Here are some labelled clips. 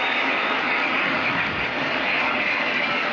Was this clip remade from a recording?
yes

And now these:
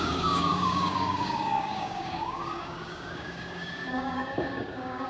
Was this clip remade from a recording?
yes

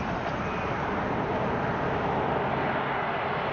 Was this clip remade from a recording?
no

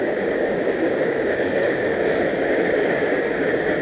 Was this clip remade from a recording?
yes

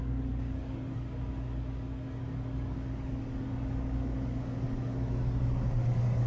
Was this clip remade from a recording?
yes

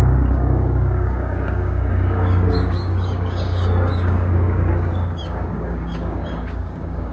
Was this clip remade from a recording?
yes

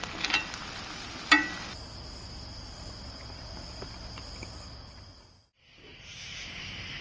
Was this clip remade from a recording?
no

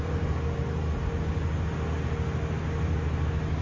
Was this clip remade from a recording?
no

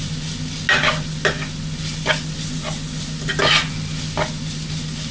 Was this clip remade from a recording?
no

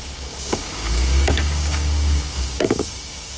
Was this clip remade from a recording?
yes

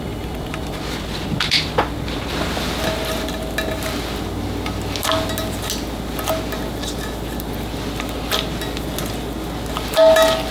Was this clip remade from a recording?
no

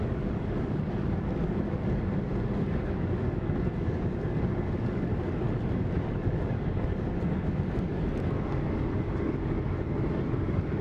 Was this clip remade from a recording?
yes